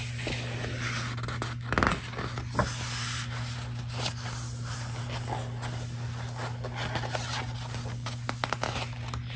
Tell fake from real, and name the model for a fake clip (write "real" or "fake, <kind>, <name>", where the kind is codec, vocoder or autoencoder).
real